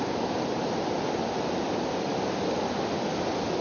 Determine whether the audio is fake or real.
real